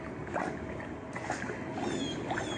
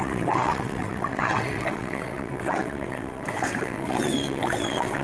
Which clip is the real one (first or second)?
first